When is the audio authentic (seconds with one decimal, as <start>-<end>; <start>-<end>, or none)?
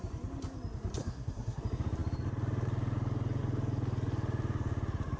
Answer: 0.0-1.0; 1.6-5.2